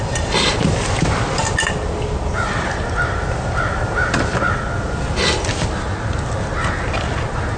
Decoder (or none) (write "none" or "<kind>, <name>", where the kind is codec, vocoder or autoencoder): none